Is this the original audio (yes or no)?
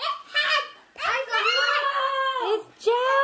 yes